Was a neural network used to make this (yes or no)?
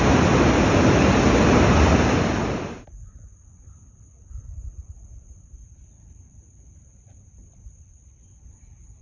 no